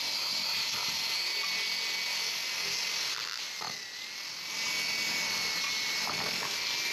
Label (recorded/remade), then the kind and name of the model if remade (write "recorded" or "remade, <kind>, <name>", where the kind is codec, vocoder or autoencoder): recorded